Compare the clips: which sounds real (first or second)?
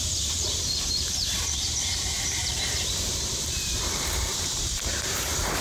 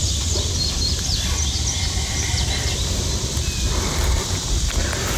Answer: second